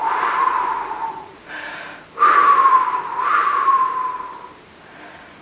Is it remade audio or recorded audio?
remade